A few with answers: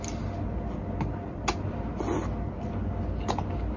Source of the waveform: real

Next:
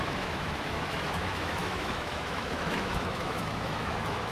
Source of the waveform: fake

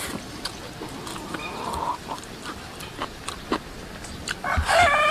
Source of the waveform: real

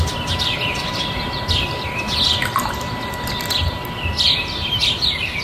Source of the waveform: fake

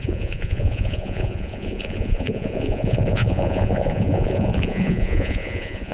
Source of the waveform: fake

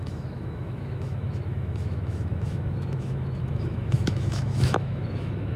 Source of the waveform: fake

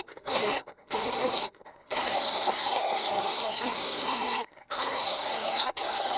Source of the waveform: fake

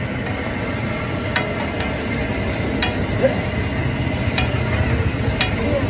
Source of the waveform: real